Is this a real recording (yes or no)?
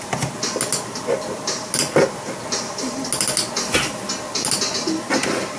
yes